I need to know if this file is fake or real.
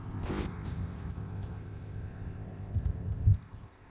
fake